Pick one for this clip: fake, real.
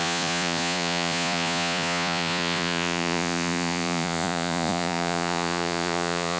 fake